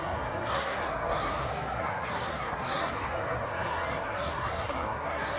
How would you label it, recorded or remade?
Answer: remade